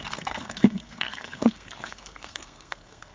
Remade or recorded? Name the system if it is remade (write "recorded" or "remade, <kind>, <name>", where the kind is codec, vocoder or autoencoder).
remade, codec, SNAC